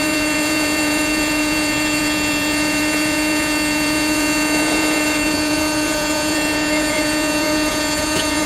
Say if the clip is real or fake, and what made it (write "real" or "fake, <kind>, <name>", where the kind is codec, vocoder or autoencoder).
fake, vocoder, Vocos